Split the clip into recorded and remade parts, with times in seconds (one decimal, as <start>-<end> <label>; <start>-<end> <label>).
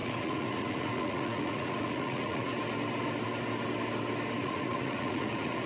0.0-2.5 remade; 2.5-4.4 recorded; 4.4-5.7 remade